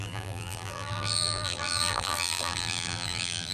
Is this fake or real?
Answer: fake